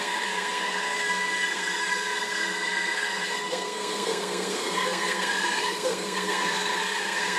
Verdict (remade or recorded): remade